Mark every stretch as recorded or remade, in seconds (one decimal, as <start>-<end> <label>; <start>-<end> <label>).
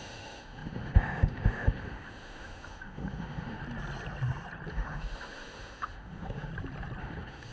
0.0-3.6 remade; 3.6-4.7 recorded; 4.7-6.5 remade; 6.5-7.0 recorded; 7.0-7.5 remade